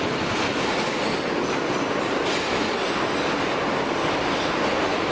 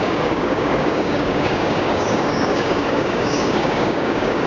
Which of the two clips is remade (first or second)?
second